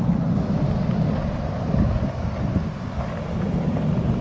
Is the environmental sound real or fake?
real